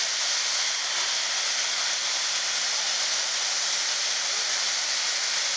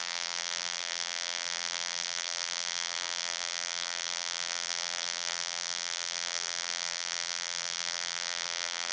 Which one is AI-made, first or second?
second